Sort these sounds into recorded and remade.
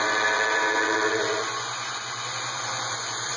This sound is remade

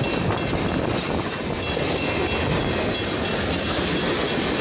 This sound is recorded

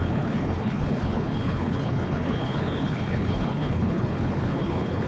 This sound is remade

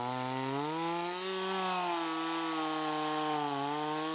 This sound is recorded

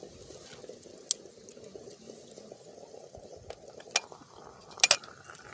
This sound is recorded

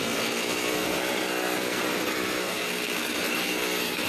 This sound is remade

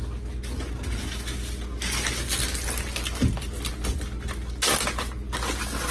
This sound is recorded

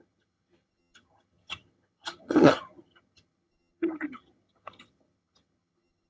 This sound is remade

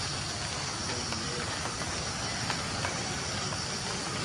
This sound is recorded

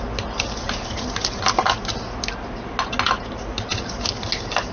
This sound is recorded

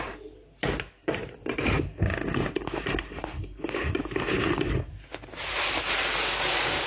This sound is recorded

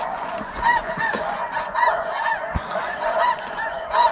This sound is remade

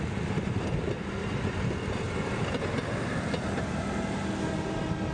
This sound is recorded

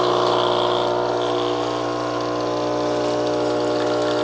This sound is recorded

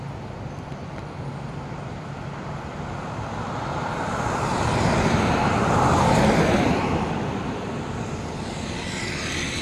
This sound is remade